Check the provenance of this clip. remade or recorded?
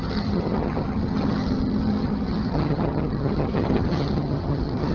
remade